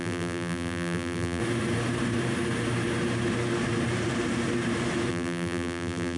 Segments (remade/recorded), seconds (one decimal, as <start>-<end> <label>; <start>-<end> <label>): 0.0-1.4 remade; 1.4-5.1 recorded; 5.1-6.2 remade